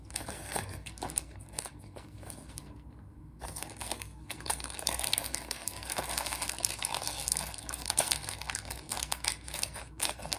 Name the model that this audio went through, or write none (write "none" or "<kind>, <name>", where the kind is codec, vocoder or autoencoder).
codec, SNAC